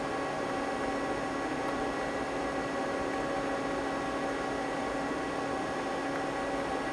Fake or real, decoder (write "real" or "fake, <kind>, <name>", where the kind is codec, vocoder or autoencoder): real